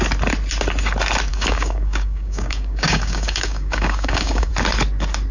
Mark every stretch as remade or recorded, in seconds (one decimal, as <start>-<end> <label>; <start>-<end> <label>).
0.0-1.3 recorded; 1.3-4.5 remade; 4.5-5.3 recorded